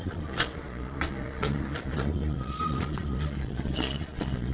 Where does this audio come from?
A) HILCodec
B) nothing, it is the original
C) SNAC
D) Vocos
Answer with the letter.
D